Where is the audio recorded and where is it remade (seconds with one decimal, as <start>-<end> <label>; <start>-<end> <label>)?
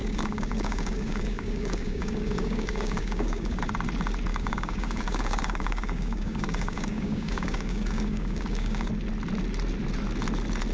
0.0-3.6 remade; 3.6-4.3 recorded; 4.3-8.9 remade; 8.9-10.7 recorded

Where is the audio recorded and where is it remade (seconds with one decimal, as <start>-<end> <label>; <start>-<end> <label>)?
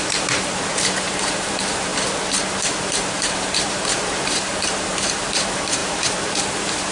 0.0-1.9 remade; 1.9-2.5 recorded; 2.5-6.9 remade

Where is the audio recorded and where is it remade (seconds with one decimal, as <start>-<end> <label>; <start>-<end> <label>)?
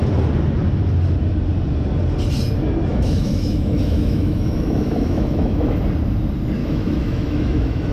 0.0-2.9 recorded; 2.9-5.8 remade; 5.8-6.6 recorded; 6.6-7.9 remade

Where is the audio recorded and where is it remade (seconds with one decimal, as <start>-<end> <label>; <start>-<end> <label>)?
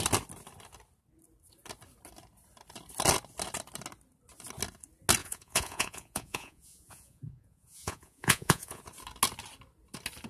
0.0-5.2 recorded; 5.2-8.8 remade; 8.8-10.3 recorded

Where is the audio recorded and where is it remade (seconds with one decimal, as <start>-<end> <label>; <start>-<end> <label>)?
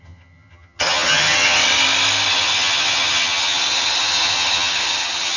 0.0-1.6 remade; 1.6-2.3 recorded; 2.3-5.4 remade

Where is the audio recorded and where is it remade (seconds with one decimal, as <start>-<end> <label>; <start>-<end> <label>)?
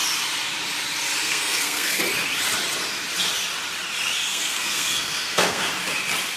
0.0-1.2 recorded; 1.2-2.0 remade; 2.0-4.3 recorded; 4.3-5.7 remade; 5.7-6.4 recorded